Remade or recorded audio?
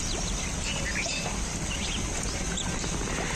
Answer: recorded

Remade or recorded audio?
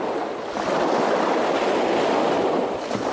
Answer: recorded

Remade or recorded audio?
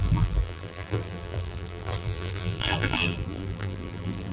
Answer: remade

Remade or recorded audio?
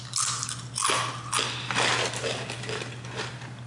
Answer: recorded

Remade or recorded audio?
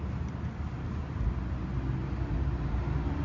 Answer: recorded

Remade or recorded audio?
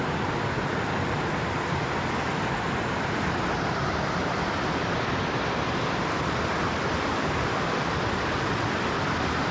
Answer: recorded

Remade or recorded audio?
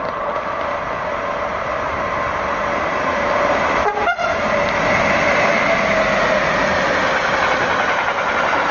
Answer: recorded